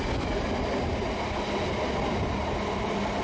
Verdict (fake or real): real